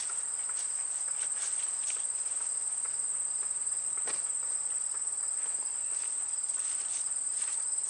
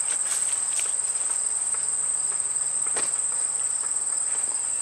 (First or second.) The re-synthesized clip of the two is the second